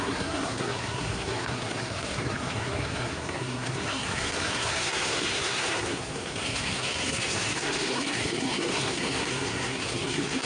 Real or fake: fake